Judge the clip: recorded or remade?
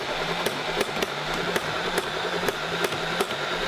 remade